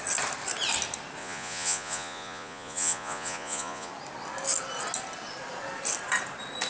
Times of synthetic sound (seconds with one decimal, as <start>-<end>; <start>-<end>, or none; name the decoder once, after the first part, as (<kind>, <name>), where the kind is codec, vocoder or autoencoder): 1.2-3.9 (vocoder, Vocos)